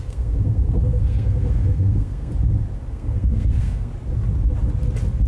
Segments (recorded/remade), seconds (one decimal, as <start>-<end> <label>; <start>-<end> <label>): 0.0-2.3 remade; 2.3-2.9 recorded; 2.9-3.9 remade; 3.9-5.3 recorded